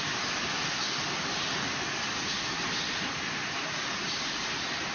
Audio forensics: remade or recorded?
recorded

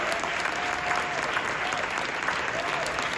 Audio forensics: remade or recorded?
recorded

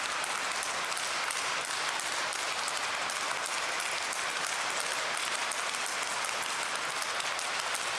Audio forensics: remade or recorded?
recorded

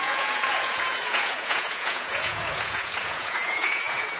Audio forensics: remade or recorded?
remade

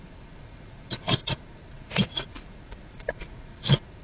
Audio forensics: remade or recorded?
remade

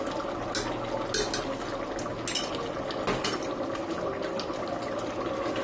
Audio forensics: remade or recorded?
recorded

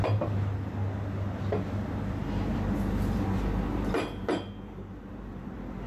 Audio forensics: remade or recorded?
recorded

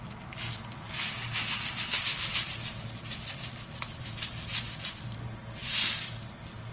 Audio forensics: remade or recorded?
recorded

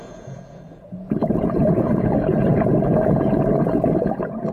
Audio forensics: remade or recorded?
remade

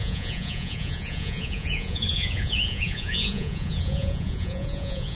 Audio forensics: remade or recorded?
remade